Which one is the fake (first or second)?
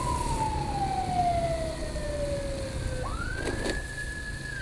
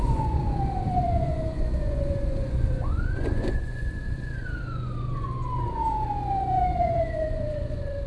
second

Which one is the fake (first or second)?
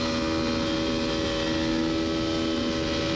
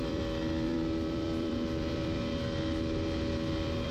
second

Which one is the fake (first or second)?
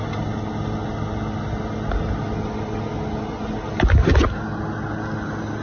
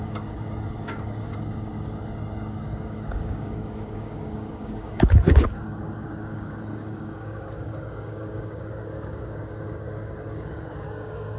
second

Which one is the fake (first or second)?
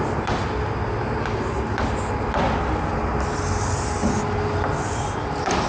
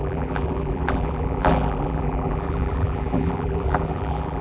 second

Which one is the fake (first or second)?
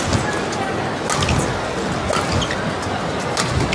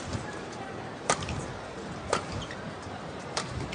second